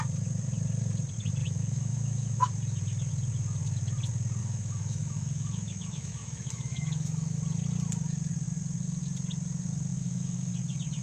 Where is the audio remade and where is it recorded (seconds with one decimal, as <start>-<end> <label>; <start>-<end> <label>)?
0.0-1.4 recorded; 1.4-2.5 remade; 2.5-4.4 recorded; 4.4-7.4 remade; 7.4-9.9 recorded; 9.9-10.5 remade; 10.5-11.0 recorded